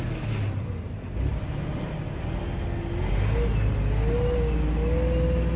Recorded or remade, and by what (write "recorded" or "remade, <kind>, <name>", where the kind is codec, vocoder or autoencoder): recorded